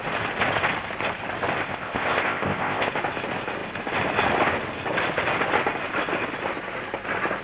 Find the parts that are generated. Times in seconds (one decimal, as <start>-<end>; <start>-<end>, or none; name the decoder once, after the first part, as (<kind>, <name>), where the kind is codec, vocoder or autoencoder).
1.6-2.9 (codec, ZipCodec)